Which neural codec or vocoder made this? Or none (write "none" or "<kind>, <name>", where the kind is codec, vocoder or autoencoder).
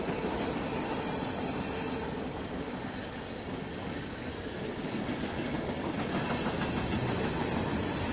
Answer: none